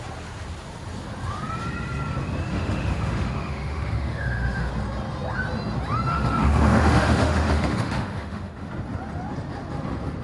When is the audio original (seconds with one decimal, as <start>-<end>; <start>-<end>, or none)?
0.0-2.5; 4.7-6.1; 8.7-10.2